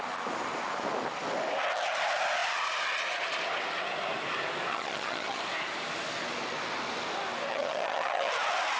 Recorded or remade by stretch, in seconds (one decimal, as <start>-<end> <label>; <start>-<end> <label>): 0.0-4.7 recorded; 4.7-5.4 remade; 5.4-7.5 recorded; 7.5-8.3 remade; 8.3-8.8 recorded